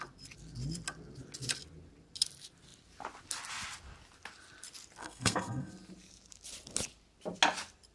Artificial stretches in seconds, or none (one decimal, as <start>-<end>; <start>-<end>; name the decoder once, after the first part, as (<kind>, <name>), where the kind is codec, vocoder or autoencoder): 5.0-5.7 (codec, SNAC)